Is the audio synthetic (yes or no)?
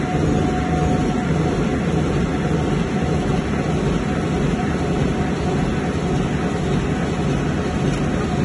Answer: no